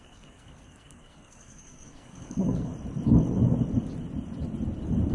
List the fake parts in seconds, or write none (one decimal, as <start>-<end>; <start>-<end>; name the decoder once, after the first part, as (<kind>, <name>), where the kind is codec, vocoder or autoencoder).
0.0-2.7 (codec, SNAC)